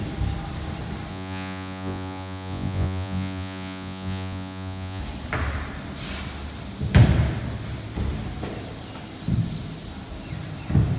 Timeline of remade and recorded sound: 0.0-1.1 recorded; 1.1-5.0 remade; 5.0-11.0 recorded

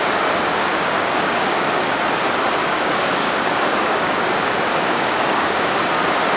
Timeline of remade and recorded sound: 0.0-0.7 recorded; 0.7-1.8 remade; 1.8-2.6 recorded; 2.6-5.8 remade; 5.8-6.4 recorded

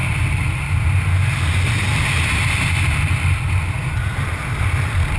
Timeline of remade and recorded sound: 0.0-0.9 remade; 0.9-1.9 recorded; 1.9-5.2 remade

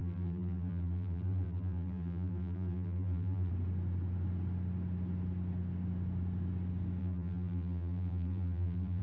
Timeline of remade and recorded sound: 0.0-3.5 remade; 3.5-7.0 recorded; 7.0-9.0 remade